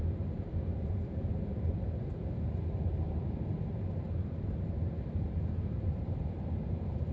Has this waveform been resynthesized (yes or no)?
yes